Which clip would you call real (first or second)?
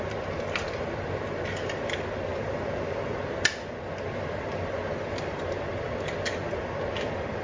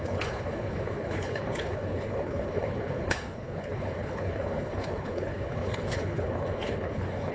first